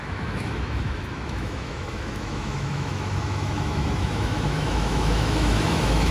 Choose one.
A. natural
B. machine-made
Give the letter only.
B